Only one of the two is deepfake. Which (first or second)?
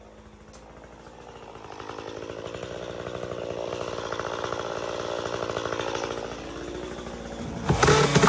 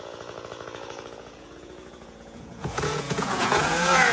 second